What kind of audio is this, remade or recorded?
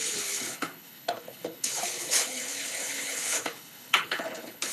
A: remade